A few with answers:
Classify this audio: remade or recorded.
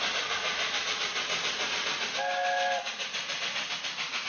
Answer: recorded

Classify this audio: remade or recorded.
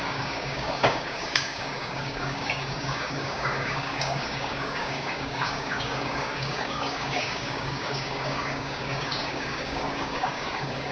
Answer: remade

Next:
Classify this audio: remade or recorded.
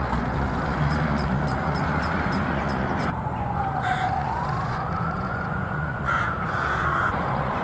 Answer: remade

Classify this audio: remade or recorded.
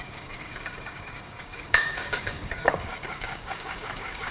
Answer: remade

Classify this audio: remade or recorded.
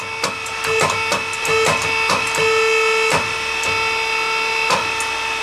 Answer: recorded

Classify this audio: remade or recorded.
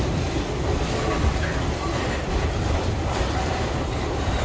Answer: recorded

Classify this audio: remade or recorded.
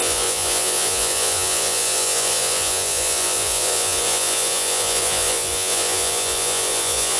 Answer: remade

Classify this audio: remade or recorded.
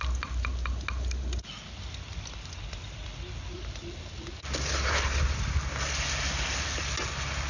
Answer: recorded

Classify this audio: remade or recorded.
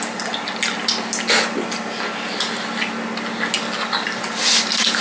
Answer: recorded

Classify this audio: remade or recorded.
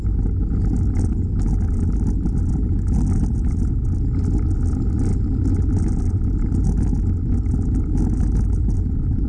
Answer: recorded